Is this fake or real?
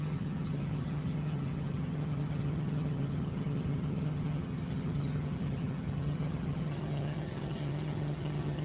fake